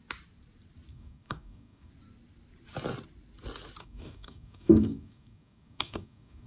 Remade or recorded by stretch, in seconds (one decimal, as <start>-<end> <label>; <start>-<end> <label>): 0.0-0.9 recorded; 0.9-1.9 remade; 1.9-3.8 recorded; 3.8-6.5 remade